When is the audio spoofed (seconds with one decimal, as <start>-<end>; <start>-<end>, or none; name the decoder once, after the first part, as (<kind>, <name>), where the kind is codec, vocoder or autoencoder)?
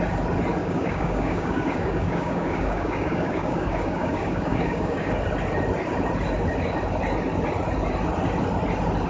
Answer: 0.6-5.1 (codec, DAC)